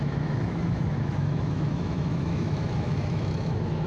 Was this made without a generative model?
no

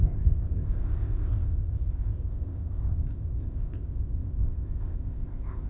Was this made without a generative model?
no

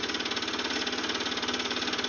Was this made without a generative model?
yes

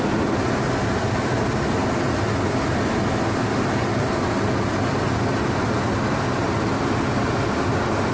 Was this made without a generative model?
yes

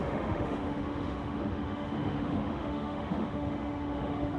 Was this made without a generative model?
no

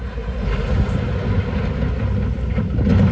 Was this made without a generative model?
yes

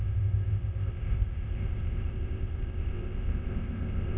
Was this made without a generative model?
no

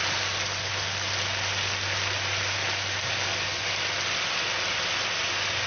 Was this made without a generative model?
yes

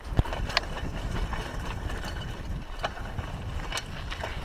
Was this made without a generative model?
yes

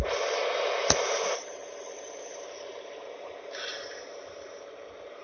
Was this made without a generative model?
no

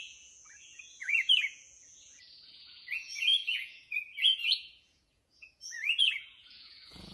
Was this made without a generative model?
no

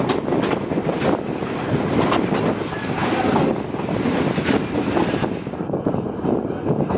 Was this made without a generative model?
yes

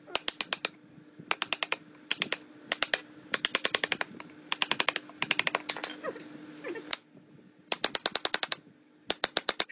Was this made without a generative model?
yes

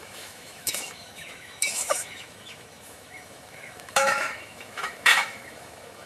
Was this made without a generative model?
no